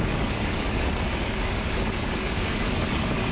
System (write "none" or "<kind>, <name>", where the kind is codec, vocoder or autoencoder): codec, DAC